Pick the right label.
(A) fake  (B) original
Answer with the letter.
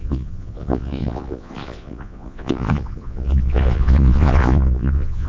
A